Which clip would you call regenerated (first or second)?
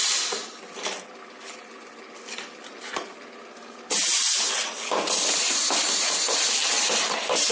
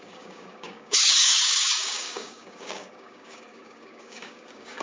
second